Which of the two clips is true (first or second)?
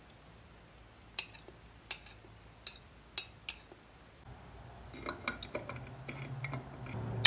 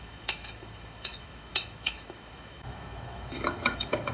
first